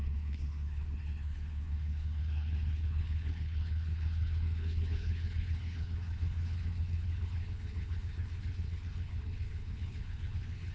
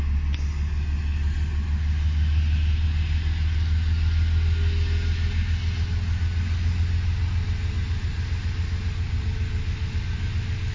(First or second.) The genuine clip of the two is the second